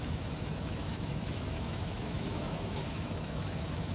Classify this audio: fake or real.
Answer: fake